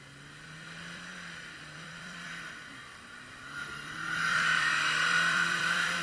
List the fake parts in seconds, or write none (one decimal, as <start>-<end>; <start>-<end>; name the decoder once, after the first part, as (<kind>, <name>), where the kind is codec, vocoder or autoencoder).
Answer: 0.0-6.0 (vocoder, BigVGAN v2)